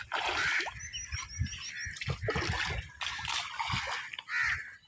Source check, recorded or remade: recorded